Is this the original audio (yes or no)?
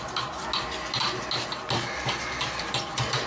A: yes